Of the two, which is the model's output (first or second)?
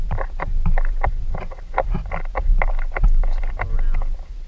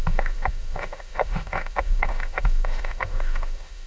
second